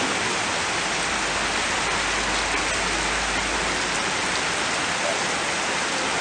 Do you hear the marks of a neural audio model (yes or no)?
no